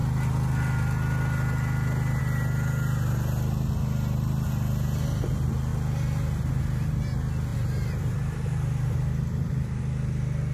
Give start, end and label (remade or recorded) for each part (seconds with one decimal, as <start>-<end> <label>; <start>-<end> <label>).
0.0-7.5 recorded; 7.5-9.8 remade; 9.8-10.5 recorded

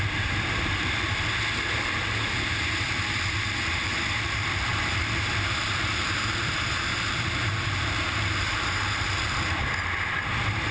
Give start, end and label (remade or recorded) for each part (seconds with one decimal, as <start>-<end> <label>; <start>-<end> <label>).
0.0-4.7 recorded; 4.7-9.7 remade; 9.7-10.7 recorded

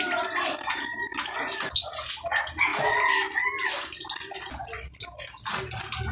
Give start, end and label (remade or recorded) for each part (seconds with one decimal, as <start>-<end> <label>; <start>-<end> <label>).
0.0-6.1 recorded

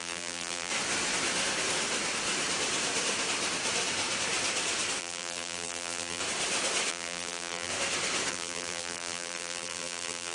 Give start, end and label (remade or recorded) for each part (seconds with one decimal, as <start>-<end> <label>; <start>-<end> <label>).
0.0-0.7 remade; 0.7-5.0 recorded; 5.0-6.2 remade; 6.2-6.9 recorded; 6.9-7.7 remade; 7.7-8.3 recorded; 8.3-10.3 remade

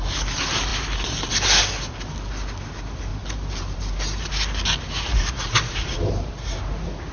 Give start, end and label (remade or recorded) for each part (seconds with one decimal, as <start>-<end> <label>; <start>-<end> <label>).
0.0-3.1 recorded; 3.1-4.3 remade; 4.3-5.1 recorded; 5.1-6.3 remade; 6.3-7.1 recorded

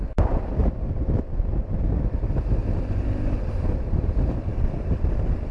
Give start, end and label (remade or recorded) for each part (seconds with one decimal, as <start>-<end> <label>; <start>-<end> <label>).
0.0-0.6 recorded; 0.6-1.6 remade; 1.6-2.6 recorded; 2.6-5.5 remade

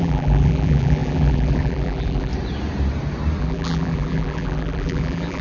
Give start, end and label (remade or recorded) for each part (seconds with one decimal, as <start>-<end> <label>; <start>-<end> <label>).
0.0-2.3 remade; 2.3-3.4 recorded; 3.4-5.4 remade

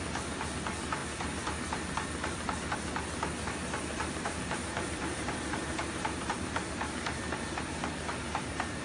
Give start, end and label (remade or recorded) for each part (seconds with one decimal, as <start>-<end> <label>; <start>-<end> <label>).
0.0-4.0 recorded; 4.0-6.3 remade; 6.3-8.8 recorded